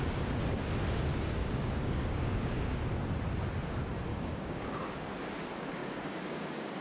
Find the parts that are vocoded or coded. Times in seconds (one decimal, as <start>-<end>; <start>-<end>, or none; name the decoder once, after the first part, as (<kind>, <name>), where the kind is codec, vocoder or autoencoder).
1.1-2.8 (codec, DAC); 4.1-5.1; 5.8-6.8

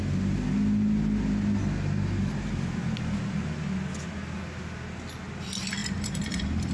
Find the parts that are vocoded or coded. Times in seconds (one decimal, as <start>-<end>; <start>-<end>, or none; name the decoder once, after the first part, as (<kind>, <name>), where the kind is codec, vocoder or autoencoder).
5.8-6.7 (vocoder, BigVGAN v2)

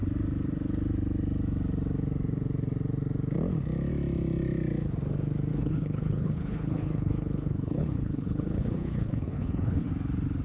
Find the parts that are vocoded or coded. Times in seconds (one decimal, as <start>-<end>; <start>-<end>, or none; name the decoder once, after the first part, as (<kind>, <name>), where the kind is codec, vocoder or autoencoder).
5.5-9.9 (codec, HILCodec)

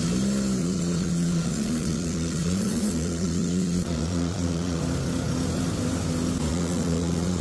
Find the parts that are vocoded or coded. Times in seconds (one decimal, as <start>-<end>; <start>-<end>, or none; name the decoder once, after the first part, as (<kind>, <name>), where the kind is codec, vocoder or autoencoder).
0.6-4.8 (vocoder, Vocos); 6.5-7.4

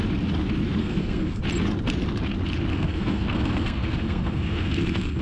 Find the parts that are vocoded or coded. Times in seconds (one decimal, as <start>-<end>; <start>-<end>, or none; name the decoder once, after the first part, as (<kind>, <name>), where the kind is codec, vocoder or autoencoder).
0.8-1.4 (codec, SNAC); 2.7-5.2